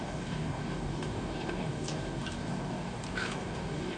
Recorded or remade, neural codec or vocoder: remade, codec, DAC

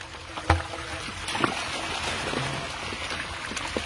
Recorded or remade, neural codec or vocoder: recorded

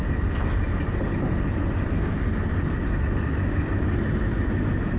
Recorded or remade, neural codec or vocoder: recorded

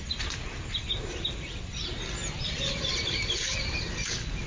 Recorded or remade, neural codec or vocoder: recorded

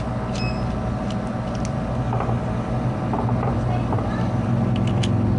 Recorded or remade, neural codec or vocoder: recorded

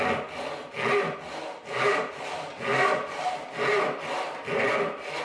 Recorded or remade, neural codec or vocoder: recorded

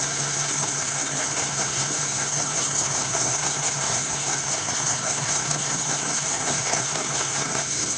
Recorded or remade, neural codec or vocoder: remade, codec, SNAC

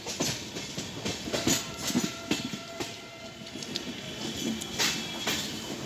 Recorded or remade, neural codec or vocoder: recorded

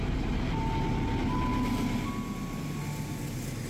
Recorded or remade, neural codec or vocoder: recorded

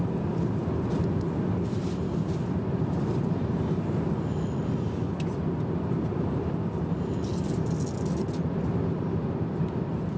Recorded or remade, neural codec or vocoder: recorded